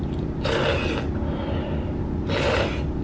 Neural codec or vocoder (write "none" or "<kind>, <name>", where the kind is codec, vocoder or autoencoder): none